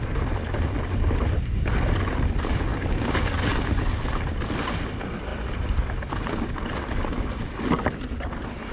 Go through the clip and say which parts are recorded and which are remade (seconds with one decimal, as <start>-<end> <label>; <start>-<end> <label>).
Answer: 0.0-2.7 recorded; 2.7-3.6 remade; 3.6-8.7 recorded